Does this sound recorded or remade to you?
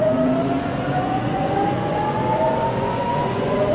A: remade